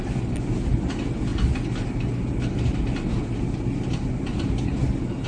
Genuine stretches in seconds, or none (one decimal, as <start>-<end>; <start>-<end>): 0.0-5.3